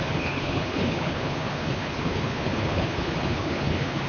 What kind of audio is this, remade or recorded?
remade